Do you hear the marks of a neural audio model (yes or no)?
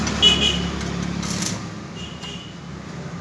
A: no